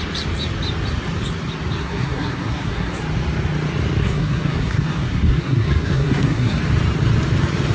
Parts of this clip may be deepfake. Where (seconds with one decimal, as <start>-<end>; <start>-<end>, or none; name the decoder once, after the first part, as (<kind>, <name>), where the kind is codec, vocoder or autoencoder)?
1.8-3.0 (codec, SNAC); 4.0-6.6